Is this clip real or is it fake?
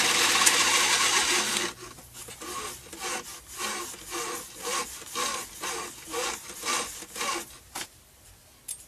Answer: real